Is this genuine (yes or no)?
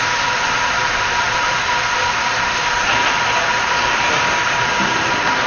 no